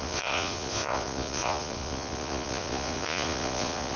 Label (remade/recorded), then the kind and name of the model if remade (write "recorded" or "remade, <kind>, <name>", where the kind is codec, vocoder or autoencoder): remade, vocoder, Vocos